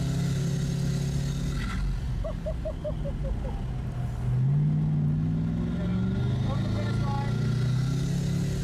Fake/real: real